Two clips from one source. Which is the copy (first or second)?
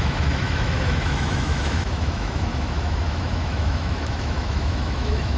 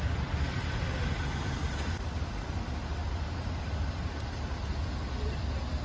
first